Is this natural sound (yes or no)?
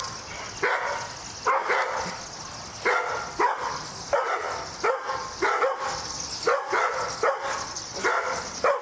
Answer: yes